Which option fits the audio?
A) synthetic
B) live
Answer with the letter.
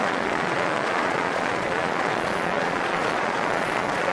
A